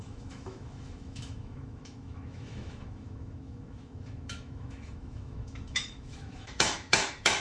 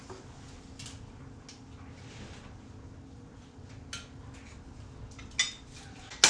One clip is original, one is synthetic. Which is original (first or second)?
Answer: second